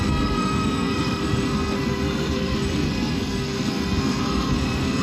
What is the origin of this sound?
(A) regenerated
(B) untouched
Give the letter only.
A